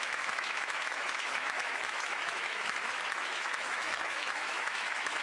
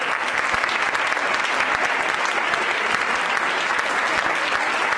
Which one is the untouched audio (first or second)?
second